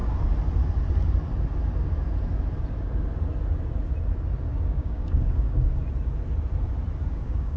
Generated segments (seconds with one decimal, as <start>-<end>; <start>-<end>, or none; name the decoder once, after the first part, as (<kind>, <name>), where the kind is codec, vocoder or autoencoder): 4.6-5.8 (codec, DAC); 7.1-7.6